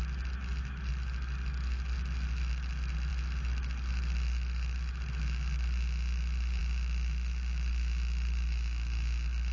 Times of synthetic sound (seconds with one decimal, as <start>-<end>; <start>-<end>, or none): none